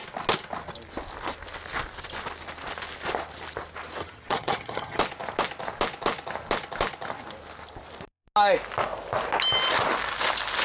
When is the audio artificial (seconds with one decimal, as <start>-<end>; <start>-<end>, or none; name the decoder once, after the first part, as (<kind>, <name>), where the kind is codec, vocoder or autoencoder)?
4.0-5.0 (vocoder, HiFi-GAN)